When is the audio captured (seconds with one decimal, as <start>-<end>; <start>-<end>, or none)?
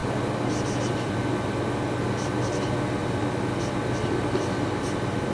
0.0-5.3